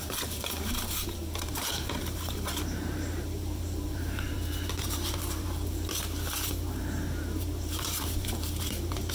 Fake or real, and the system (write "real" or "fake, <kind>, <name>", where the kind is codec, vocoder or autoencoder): fake, vocoder, BigVGAN v2